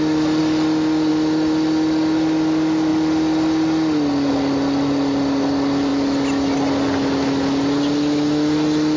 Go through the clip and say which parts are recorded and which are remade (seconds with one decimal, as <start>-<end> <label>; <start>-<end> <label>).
0.0-9.0 recorded